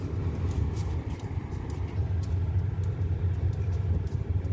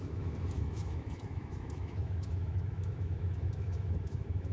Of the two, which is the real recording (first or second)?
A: first